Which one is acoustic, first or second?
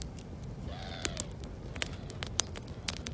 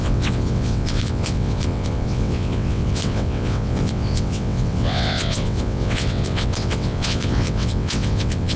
first